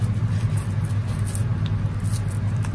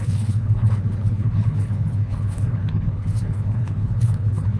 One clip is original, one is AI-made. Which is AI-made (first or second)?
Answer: second